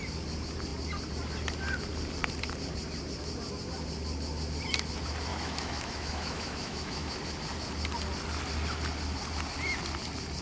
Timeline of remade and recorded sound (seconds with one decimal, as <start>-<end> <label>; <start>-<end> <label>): 0.0-5.3 recorded; 5.3-7.1 remade; 7.1-10.4 recorded